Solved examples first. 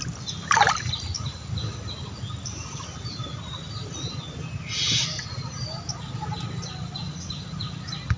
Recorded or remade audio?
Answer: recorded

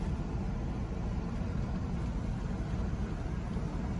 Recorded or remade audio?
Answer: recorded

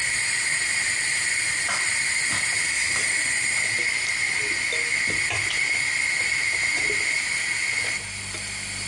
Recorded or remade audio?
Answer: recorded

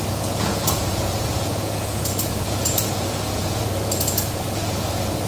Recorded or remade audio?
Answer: remade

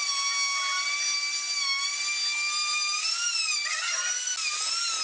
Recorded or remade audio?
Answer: recorded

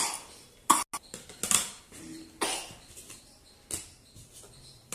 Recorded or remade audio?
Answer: recorded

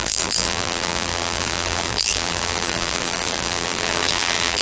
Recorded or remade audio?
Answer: remade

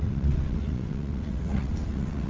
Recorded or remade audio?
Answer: remade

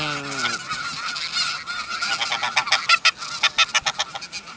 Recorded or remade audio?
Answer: recorded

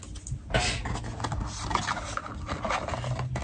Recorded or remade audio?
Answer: recorded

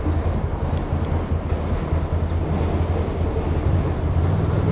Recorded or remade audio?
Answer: recorded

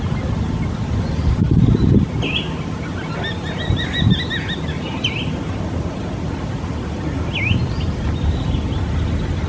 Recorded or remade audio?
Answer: recorded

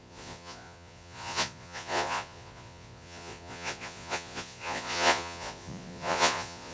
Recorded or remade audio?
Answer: remade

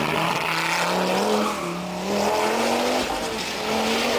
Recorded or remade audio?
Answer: recorded